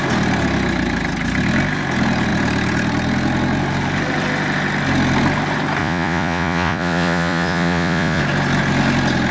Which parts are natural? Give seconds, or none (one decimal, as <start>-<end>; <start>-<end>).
0.0-5.8; 8.2-9.3